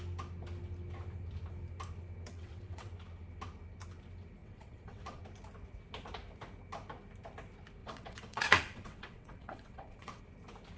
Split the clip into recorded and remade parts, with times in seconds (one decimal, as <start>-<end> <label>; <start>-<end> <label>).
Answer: 0.0-2.3 recorded; 2.3-2.9 remade; 2.9-4.4 recorded; 4.4-5.2 remade; 5.2-7.8 recorded; 7.8-10.2 remade; 10.2-10.8 recorded